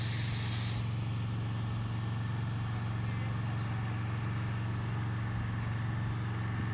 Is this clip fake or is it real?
real